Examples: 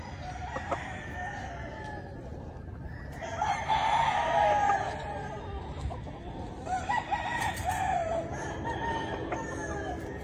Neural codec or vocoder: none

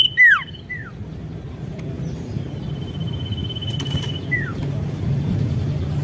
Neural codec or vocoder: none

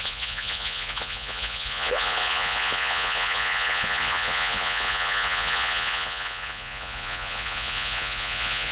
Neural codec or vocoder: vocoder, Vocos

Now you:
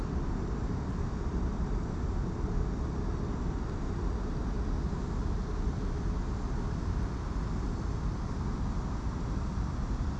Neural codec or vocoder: none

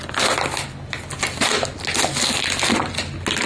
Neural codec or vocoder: none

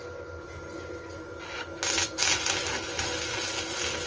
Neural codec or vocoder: none